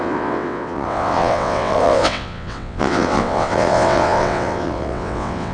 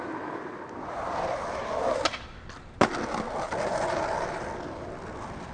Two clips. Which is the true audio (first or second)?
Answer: second